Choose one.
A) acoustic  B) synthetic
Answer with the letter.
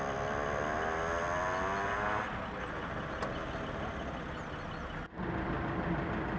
A